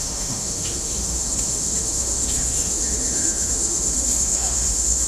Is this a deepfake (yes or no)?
yes